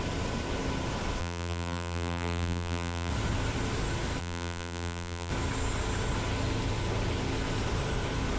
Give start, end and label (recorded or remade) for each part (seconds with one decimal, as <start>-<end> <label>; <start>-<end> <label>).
0.0-1.2 recorded; 1.2-3.1 remade; 3.1-4.2 recorded; 4.2-5.3 remade; 5.3-8.4 recorded